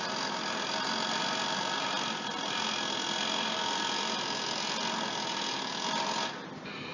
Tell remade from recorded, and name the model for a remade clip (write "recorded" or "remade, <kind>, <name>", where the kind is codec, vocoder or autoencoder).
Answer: recorded